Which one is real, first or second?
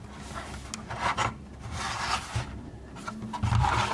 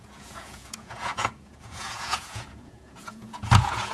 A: first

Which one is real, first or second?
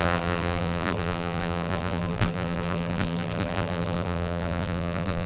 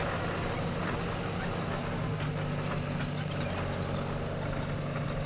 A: second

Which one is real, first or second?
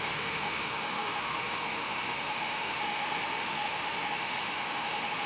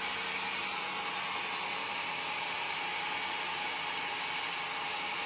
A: second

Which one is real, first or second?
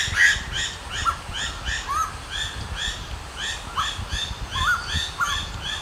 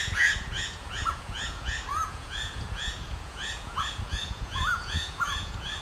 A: first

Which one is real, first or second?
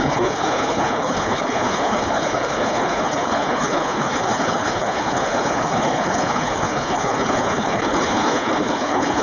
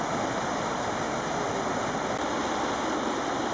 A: second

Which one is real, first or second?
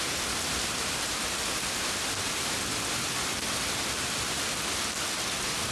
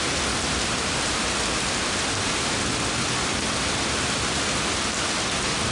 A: second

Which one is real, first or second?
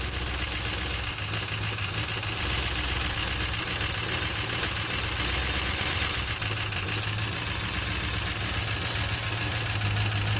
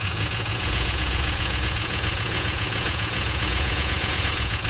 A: first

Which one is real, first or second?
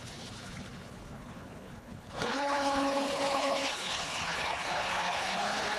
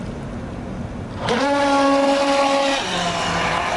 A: second